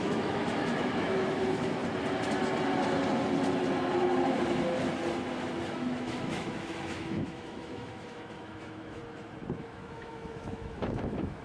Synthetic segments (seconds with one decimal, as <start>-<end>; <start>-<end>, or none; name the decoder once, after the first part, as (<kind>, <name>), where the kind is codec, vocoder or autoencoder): 0.0-1.8 (autoencoder, DAC-VAE); 5.7-9.0; 9.6-11.4